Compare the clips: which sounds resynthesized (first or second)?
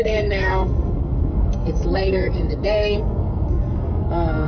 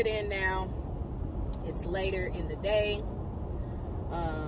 first